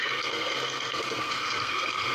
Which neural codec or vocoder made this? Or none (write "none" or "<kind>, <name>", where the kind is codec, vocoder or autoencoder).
codec, SNAC